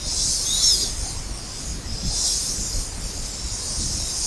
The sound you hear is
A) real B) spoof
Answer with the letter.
A